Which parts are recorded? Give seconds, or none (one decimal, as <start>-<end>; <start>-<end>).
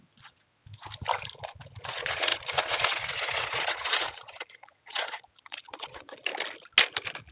0.6-1.8; 6.3-7.3